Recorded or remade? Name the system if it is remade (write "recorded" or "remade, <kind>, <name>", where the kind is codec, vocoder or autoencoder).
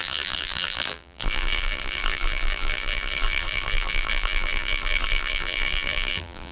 remade, vocoder, BigVGAN v2